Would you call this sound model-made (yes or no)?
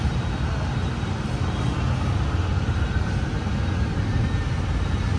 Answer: no